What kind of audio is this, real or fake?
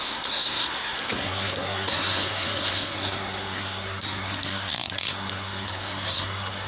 fake